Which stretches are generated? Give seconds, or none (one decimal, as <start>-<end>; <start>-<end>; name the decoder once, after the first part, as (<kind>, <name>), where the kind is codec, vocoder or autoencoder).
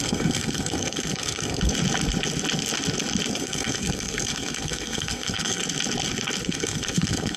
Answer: 0.0-1.7 (codec, SNAC); 3.3-5.6; 6.4-7.4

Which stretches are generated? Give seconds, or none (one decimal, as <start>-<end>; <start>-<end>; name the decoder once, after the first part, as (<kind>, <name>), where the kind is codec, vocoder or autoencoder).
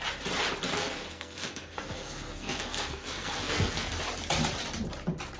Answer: 0.7-3.9 (codec, SNAC)